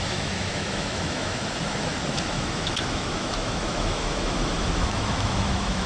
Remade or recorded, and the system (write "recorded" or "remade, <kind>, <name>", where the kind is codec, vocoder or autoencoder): remade, autoencoder, DAC-VAE